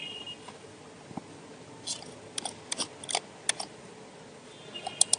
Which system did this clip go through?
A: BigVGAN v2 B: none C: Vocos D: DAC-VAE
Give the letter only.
B